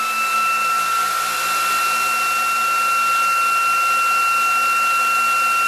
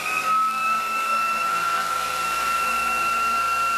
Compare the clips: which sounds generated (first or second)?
second